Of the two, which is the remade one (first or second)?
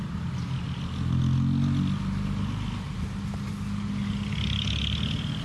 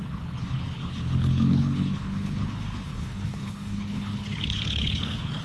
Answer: second